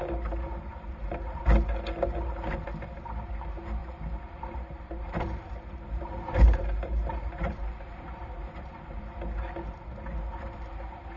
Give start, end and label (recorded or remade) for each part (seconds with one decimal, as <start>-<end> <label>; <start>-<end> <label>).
0.0-0.7 recorded; 0.7-1.4 remade; 1.4-3.8 recorded; 3.8-9.0 remade; 9.0-11.2 recorded